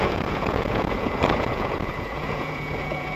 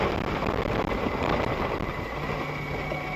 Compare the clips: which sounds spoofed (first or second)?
first